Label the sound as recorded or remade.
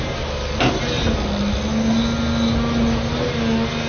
recorded